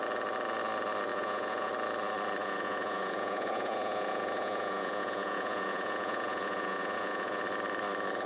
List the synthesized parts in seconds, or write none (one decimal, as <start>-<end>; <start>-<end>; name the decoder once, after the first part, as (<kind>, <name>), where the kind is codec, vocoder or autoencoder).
1.1-1.7 (vocoder, Vocos); 2.4-7.4

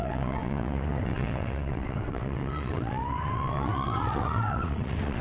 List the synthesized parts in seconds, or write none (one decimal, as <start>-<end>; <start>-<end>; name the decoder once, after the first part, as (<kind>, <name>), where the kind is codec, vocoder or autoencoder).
0.0-5.2 (vocoder, WaveNeXt)

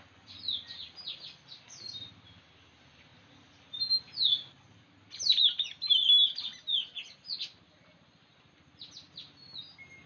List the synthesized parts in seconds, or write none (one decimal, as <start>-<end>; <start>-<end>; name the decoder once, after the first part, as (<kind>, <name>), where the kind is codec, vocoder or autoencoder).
none

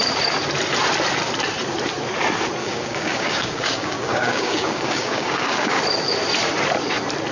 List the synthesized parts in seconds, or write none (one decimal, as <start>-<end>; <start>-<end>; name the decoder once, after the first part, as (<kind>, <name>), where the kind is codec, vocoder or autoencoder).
2.6-5.8 (codec, DAC)

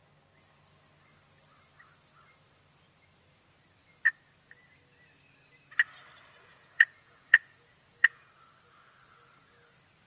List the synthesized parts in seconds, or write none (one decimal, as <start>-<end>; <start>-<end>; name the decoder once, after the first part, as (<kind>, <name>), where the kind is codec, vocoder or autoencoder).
6.5-8.3 (vocoder, Vocos)

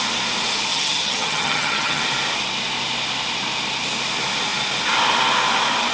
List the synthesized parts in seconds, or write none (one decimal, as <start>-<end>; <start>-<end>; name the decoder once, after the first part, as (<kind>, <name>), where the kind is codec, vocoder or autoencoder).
0.7-2.0 (vocoder, HiFi-GAN)

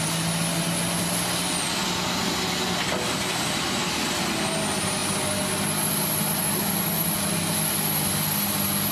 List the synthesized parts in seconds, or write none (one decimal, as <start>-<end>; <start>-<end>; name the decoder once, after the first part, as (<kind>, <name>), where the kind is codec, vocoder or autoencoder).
none